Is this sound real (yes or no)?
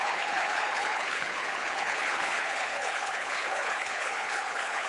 no